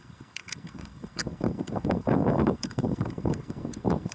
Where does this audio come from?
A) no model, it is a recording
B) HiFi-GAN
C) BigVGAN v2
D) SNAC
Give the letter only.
D